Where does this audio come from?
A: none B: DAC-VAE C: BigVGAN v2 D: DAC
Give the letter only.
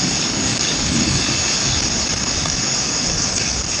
D